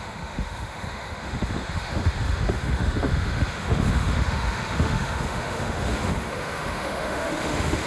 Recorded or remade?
remade